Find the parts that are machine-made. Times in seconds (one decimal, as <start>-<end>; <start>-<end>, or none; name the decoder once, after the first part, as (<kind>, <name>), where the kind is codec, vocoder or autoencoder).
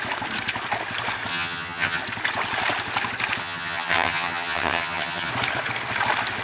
1.3-2.0 (vocoder, HiFi-GAN); 3.4-5.3